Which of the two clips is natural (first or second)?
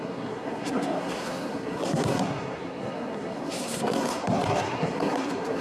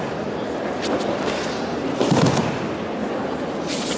second